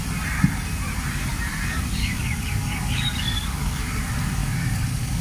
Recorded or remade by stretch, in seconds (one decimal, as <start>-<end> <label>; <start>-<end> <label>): 0.0-2.0 recorded; 2.0-4.0 remade; 4.0-4.4 recorded; 4.4-5.2 remade